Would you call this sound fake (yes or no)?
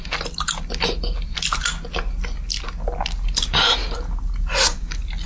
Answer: no